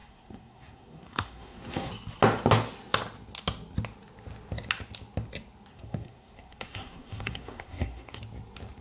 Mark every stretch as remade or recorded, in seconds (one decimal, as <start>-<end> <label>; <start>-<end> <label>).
0.0-1.9 remade; 1.9-5.7 recorded; 5.7-8.2 remade; 8.2-8.8 recorded